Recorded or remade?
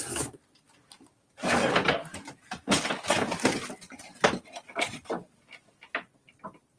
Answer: recorded